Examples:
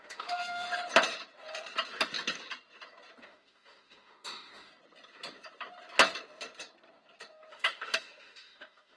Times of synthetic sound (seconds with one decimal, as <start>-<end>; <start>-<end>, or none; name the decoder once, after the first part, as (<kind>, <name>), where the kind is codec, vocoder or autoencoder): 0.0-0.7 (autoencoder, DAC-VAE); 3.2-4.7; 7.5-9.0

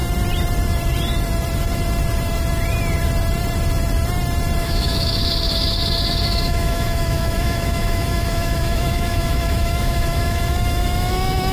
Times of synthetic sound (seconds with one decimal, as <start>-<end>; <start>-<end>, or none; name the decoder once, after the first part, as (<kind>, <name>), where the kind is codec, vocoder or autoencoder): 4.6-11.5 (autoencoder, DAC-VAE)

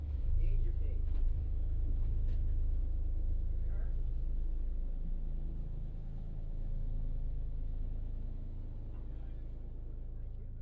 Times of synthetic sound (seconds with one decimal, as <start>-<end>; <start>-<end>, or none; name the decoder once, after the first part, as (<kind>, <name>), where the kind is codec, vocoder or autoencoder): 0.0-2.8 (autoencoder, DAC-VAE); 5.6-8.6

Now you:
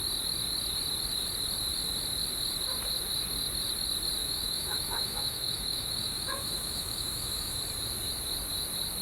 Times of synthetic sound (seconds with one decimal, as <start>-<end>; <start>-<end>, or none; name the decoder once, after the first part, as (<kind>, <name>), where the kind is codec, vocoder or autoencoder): 4.2-7.6 (autoencoder, DAC-VAE)

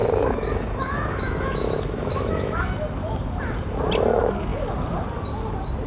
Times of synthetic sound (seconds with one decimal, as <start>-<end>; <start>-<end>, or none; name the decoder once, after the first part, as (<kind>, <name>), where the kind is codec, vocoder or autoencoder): 0.0-2.6 (autoencoder, DAC-VAE)

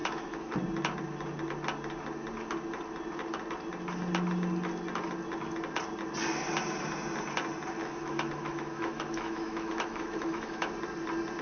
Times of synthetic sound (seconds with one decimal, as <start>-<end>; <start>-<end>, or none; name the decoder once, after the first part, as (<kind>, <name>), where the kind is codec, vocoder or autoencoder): 0.0-0.5 (autoencoder, DAC-VAE); 7.8-10.7

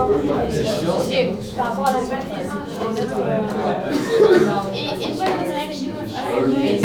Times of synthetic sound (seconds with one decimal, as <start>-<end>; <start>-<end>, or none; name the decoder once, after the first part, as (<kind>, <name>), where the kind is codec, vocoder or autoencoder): 0.0-2.0 (autoencoder, DAC-VAE); 2.5-2.9; 3.8-6.8

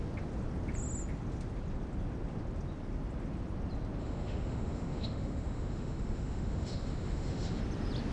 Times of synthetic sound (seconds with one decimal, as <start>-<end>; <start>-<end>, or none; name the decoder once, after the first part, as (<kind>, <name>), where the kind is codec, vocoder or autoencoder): 4.0-7.6 (autoencoder, DAC-VAE)